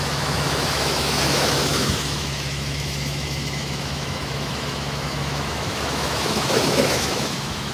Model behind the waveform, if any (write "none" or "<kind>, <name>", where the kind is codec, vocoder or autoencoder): autoencoder, DAC-VAE